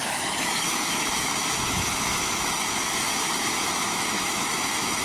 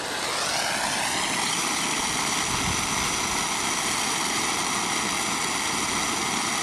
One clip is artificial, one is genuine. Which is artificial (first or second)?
first